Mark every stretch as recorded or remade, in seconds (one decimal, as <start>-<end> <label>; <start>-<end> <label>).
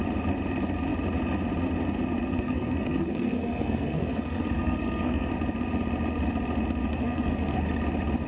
0.0-2.3 recorded; 2.3-5.3 remade; 5.3-6.9 recorded; 6.9-7.6 remade; 7.6-8.3 recorded